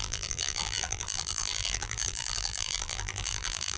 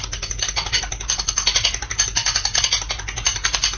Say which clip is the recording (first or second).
second